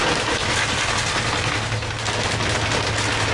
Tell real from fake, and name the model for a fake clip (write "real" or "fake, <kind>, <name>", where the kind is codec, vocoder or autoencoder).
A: real